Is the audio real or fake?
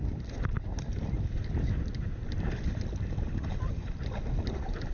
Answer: real